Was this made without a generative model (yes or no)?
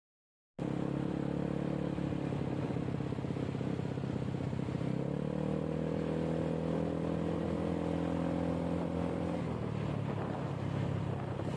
yes